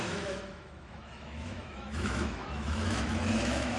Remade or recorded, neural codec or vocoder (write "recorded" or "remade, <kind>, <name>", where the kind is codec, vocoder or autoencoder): remade, autoencoder, DAC-VAE